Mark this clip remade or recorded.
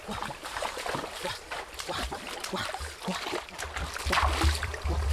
recorded